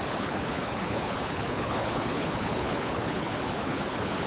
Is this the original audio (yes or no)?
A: no